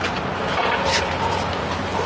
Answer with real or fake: real